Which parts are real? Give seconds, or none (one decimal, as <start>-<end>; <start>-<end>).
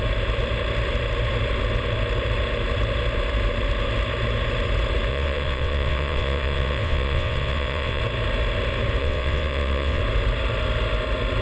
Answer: 0.0-5.1; 8.0-9.0; 10.0-11.4